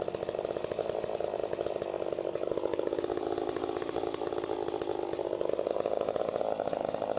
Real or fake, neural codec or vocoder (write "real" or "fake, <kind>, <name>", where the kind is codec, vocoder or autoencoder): real